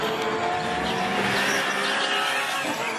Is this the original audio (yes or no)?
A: yes